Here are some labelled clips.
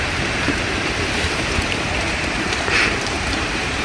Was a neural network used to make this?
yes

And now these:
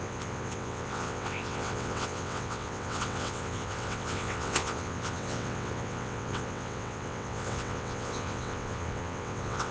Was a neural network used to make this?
yes